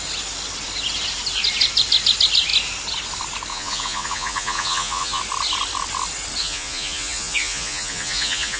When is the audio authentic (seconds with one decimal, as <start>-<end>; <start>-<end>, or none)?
0.0-3.5; 5.2-6.4